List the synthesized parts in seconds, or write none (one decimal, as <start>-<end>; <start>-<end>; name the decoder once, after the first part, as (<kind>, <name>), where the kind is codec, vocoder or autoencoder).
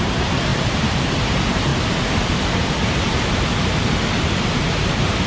0.0-1.7 (vocoder, BigVGAN v2); 3.8-5.3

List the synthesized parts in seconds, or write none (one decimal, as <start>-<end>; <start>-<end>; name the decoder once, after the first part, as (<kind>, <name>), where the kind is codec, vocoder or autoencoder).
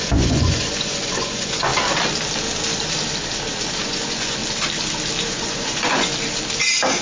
0.0-1.7 (vocoder, Vocos); 3.8-4.4; 5.3-6.1